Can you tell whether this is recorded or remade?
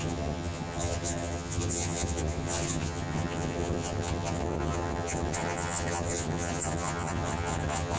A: remade